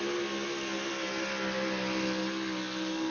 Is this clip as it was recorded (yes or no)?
yes